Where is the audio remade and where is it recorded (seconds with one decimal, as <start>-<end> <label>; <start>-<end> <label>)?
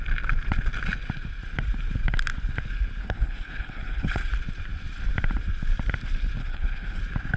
0.0-3.0 recorded; 3.0-4.3 remade; 4.3-6.4 recorded; 6.4-7.0 remade; 7.0-7.4 recorded